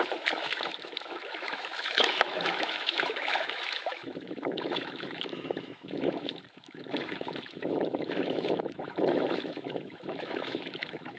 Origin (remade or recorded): remade